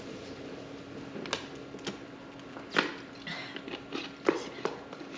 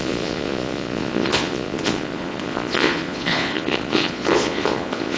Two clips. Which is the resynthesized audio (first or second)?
second